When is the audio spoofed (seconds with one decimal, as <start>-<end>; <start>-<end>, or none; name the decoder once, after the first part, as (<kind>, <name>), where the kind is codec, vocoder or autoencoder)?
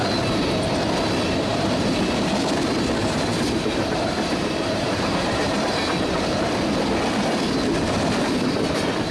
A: 1.5-2.0 (vocoder, BigVGAN v2); 3.0-6.5